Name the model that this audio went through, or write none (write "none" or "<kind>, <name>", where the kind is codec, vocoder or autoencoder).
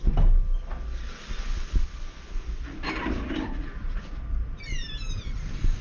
none